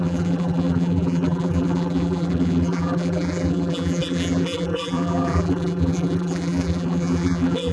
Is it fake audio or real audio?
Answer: fake